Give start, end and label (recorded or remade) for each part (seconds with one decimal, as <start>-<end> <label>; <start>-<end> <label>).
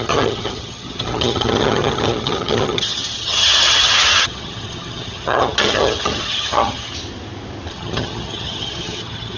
0.0-6.9 remade; 6.9-7.7 recorded; 7.7-9.4 remade